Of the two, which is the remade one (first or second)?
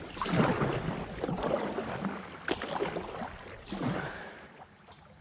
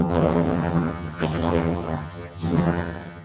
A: second